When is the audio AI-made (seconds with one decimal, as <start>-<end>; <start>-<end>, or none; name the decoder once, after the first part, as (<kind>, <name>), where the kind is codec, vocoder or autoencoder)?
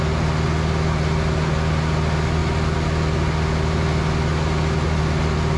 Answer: none